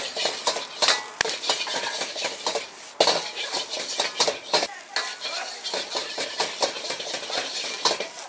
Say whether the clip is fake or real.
real